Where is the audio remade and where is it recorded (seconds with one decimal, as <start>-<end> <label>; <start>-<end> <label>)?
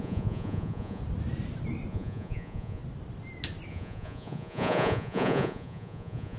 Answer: 0.0-1.0 remade; 1.0-1.9 recorded; 1.9-2.8 remade; 2.8-3.7 recorded; 3.7-6.4 remade